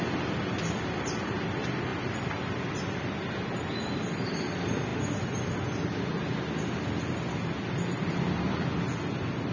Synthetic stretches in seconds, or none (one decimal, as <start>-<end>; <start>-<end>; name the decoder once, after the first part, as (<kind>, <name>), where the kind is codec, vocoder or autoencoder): none